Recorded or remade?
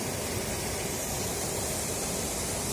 recorded